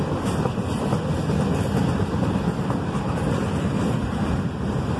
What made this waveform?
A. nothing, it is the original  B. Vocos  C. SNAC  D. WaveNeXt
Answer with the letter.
A